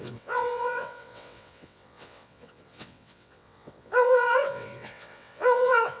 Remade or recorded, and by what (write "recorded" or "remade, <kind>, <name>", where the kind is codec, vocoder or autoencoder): remade, vocoder, WaveNeXt